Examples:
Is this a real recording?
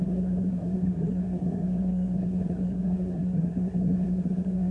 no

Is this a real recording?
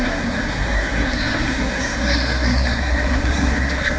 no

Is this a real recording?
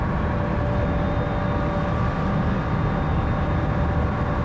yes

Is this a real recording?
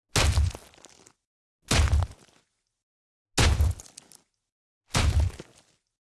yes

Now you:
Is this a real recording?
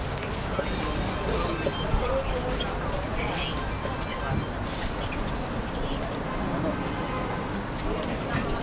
yes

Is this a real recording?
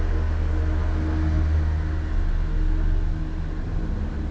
yes